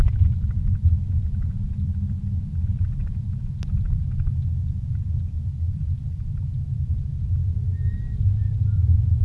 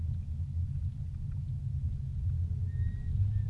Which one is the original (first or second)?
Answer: second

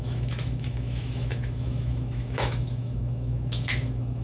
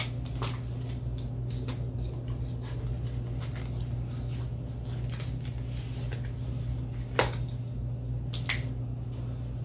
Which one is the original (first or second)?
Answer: second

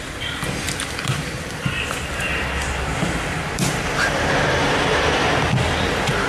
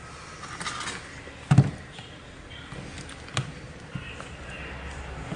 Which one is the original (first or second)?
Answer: second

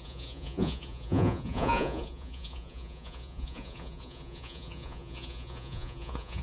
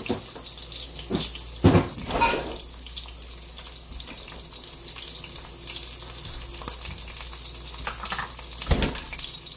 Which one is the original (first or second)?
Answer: second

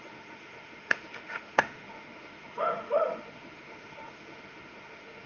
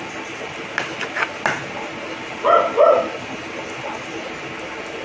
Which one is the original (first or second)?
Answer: second